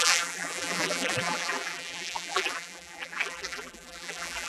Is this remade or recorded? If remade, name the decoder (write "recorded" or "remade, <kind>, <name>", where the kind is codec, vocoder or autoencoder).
remade, vocoder, BigVGAN v2